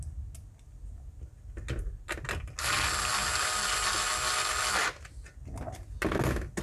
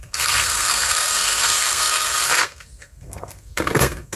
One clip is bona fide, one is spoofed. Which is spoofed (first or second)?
second